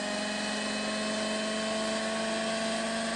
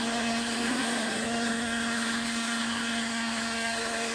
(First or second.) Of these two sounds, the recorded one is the first